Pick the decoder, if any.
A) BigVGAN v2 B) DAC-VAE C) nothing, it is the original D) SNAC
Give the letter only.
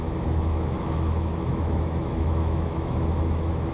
B